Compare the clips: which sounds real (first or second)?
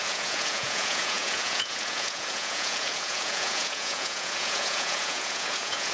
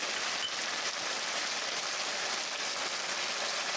second